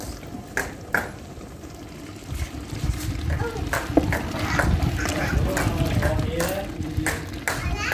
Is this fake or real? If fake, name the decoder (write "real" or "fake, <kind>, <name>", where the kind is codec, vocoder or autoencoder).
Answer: real